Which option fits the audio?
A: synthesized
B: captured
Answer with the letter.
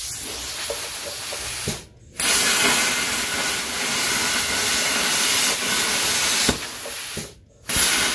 B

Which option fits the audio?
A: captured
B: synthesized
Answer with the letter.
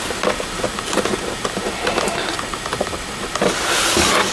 A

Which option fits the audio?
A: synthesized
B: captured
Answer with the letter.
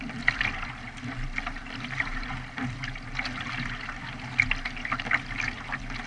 B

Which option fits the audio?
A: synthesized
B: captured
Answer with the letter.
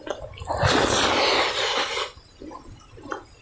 B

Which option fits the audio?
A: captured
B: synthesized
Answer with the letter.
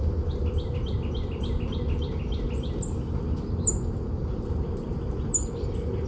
A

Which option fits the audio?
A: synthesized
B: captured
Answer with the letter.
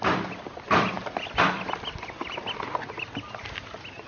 B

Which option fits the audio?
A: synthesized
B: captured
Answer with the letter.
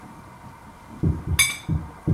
B